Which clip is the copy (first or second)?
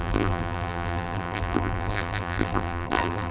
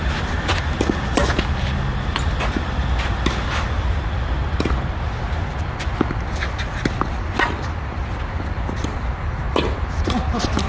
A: first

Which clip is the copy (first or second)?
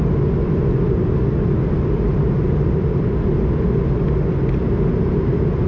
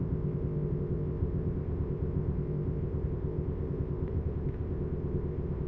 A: second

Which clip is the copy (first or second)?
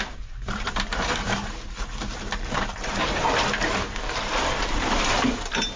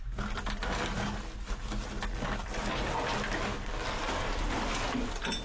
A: first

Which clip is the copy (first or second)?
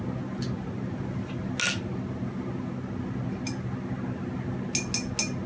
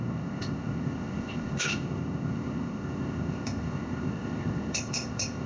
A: second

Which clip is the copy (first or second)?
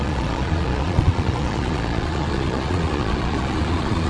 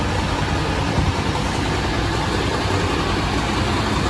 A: first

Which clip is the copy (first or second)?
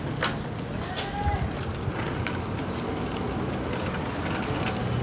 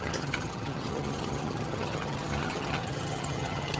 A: second